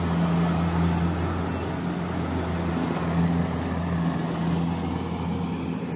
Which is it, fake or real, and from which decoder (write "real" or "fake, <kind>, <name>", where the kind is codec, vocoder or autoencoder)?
real